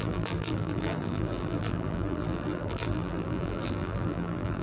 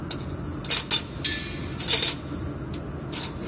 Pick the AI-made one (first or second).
first